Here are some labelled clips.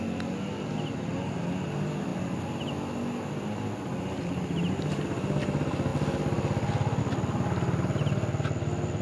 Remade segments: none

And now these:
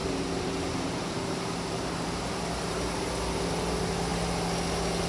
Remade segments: 0.0-3.1 (vocoder, BigVGAN v2)